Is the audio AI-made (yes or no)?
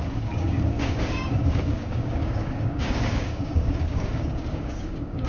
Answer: yes